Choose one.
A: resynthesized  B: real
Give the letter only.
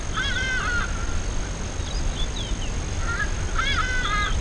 B